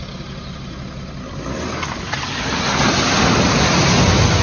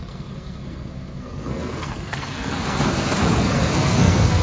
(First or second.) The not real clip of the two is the second